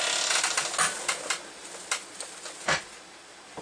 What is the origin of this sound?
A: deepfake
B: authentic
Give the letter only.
B